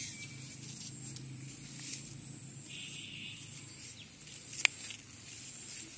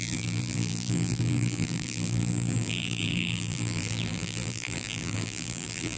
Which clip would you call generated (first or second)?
second